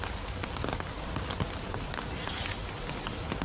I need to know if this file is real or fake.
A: real